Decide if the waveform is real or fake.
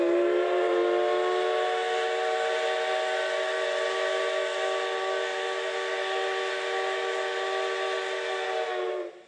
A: real